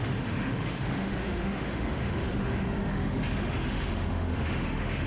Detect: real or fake fake